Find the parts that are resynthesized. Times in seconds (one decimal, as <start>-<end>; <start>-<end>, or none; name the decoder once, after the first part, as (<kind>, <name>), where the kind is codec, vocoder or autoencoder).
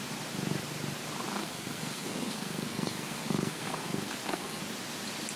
1.4-4.6 (codec, SNAC)